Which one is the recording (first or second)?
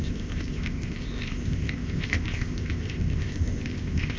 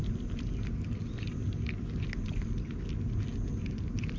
second